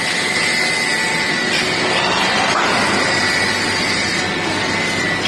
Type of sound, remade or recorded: recorded